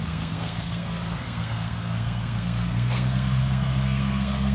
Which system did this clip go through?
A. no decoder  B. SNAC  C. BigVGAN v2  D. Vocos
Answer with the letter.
B